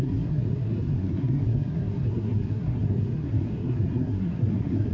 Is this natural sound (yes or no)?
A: no